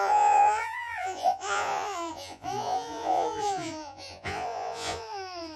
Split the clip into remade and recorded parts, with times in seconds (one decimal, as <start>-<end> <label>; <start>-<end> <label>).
0.0-5.6 remade